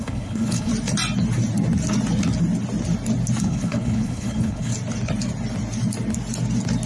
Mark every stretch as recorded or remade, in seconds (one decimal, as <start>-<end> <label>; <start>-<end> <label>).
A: 0.0-0.7 remade; 0.7-3.4 recorded; 3.4-4.7 remade; 4.7-6.9 recorded